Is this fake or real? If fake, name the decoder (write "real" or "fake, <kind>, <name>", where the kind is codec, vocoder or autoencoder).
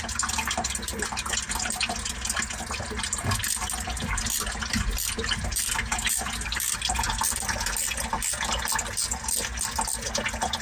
real